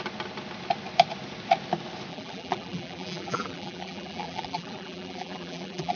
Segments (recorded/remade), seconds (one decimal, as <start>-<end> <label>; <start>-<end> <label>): 0.0-2.1 recorded; 2.1-6.0 remade